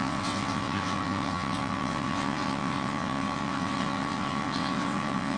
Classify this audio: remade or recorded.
remade